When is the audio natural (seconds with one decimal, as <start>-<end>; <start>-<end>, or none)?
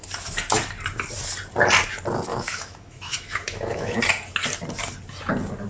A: 0.0-2.3; 4.0-5.7